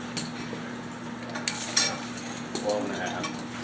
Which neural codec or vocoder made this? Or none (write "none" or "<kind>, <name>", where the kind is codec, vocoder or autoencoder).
none